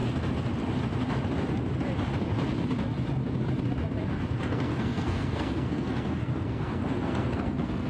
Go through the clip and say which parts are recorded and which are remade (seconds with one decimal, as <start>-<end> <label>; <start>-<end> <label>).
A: 0.0-4.4 recorded; 4.4-7.9 remade